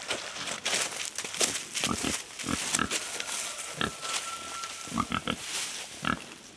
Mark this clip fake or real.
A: real